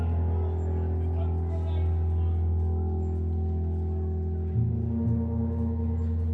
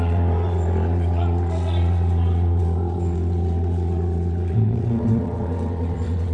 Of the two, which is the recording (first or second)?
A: first